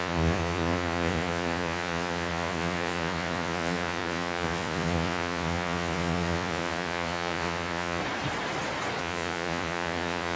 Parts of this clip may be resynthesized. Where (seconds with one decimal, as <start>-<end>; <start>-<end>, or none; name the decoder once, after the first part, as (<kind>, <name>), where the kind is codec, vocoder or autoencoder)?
0.0-8.0 (vocoder, Vocos); 9.0-10.4